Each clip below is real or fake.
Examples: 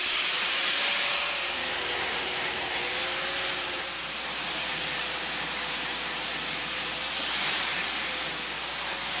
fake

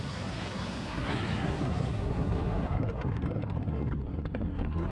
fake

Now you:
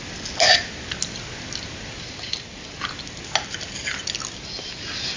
real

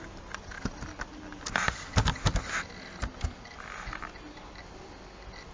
real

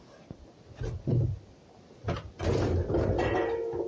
real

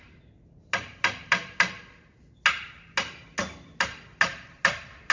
real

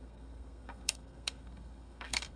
fake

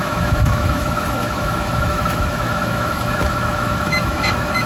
fake